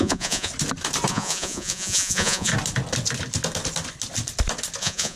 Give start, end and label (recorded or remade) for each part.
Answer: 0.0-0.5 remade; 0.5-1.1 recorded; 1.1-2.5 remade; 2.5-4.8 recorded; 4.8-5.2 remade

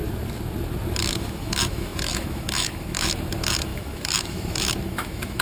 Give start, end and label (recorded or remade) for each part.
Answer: 0.0-1.0 recorded; 1.0-5.4 remade

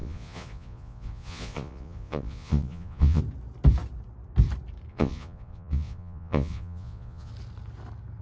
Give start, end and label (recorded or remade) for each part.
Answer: 0.0-3.2 remade; 3.2-4.9 recorded; 4.9-7.3 remade; 7.3-8.2 recorded

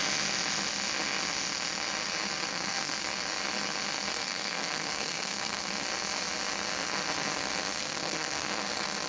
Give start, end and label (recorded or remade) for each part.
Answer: 0.0-2.5 recorded; 2.5-3.0 remade; 3.0-4.1 recorded; 4.1-5.6 remade; 5.6-7.8 recorded; 7.8-8.6 remade; 8.6-9.1 recorded